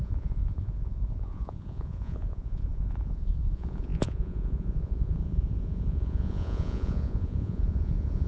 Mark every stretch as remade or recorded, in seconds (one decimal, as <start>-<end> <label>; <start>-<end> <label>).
0.0-8.3 remade